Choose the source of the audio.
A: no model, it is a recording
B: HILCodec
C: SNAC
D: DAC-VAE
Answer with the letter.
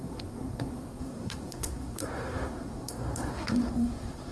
C